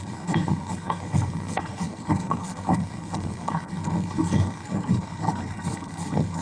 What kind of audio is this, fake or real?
fake